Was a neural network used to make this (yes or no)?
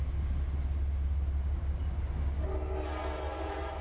no